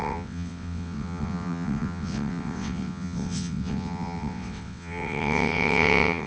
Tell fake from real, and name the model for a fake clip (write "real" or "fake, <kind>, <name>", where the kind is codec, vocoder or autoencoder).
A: fake, vocoder, WaveNeXt